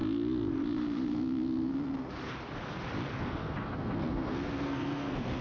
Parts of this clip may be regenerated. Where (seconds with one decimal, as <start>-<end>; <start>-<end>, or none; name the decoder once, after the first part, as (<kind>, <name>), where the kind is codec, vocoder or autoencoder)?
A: 3.2-5.4 (codec, SNAC)